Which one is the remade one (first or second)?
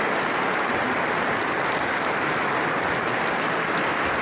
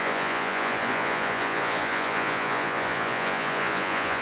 second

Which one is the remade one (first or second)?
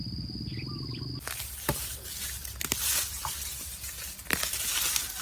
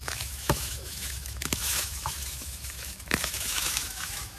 second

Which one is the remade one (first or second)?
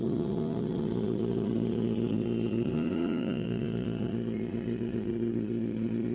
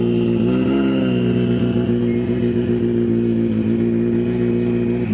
first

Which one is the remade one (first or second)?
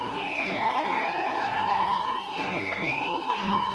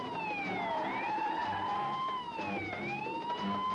first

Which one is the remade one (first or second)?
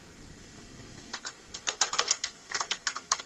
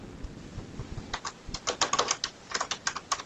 first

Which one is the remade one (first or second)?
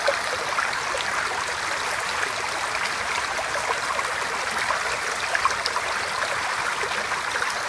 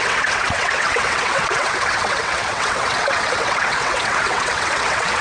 second